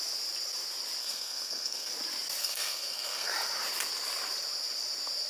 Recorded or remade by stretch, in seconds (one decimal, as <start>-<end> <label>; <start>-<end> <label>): 0.0-1.0 recorded; 1.0-1.9 remade; 1.9-2.4 recorded; 2.4-3.3 remade; 3.3-5.3 recorded